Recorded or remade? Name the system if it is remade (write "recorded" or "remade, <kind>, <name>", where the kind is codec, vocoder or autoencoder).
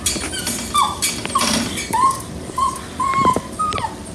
recorded